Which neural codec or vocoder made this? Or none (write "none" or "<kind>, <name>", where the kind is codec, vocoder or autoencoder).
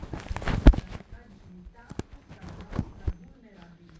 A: none